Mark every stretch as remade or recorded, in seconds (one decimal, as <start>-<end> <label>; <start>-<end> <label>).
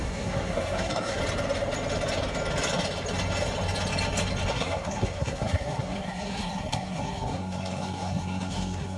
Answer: 0.0-1.2 remade; 1.2-4.5 recorded; 4.5-9.0 remade